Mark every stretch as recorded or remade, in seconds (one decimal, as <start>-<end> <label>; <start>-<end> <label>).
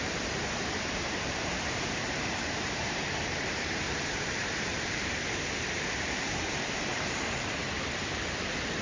0.0-7.6 remade; 7.6-8.8 recorded